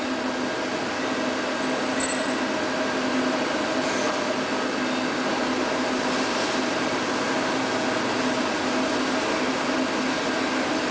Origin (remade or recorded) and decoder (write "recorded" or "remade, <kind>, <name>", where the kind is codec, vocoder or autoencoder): recorded